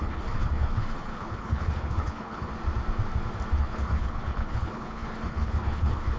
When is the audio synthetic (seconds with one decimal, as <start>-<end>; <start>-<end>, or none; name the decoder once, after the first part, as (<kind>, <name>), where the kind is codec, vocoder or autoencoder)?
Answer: 0.0-2.5 (codec, HILCodec); 3.6-6.2